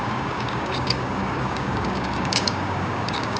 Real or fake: fake